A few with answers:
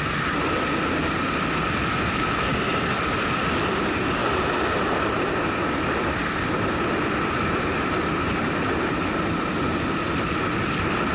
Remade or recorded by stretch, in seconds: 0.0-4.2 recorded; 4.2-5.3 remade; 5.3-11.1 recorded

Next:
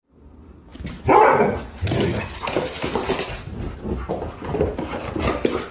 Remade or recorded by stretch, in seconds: 0.0-5.7 recorded